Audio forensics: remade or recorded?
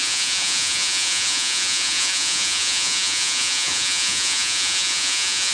remade